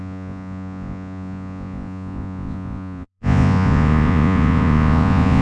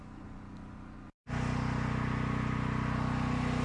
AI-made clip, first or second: first